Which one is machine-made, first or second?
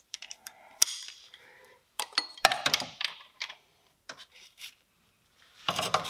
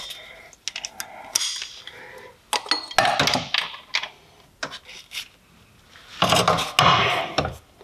first